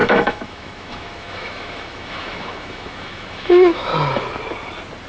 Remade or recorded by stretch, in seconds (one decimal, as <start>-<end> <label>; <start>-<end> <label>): 0.0-3.9 remade; 3.9-5.1 recorded